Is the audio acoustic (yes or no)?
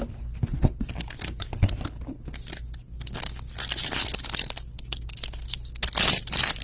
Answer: yes